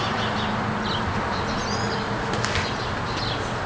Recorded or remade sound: recorded